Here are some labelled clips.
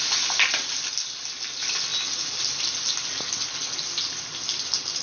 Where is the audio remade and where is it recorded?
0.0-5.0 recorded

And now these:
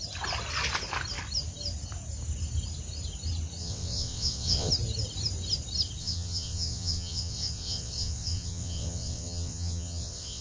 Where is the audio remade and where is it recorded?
0.0-3.6 recorded; 3.6-4.7 remade; 4.7-6.0 recorded; 6.0-10.4 remade

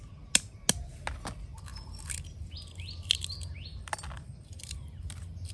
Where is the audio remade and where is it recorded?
0.0-5.5 recorded